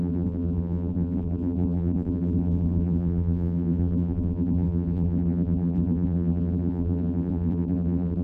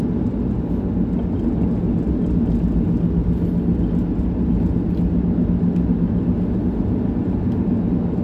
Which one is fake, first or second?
first